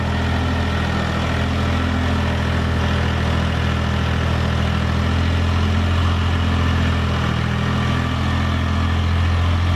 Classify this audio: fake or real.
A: real